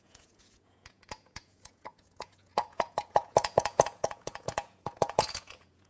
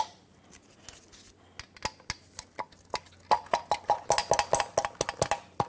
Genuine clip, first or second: second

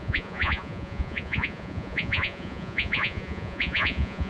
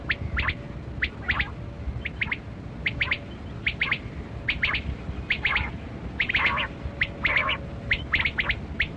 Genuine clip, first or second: second